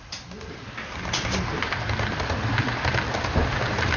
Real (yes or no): yes